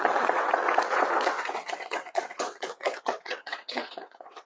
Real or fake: fake